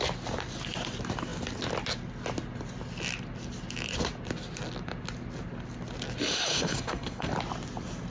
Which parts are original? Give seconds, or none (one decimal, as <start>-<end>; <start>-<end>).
0.0-6.5; 7.3-8.1